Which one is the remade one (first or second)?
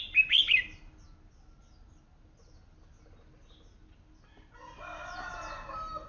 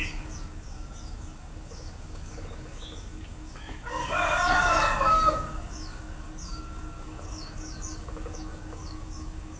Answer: second